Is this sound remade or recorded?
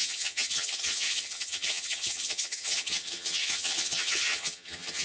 remade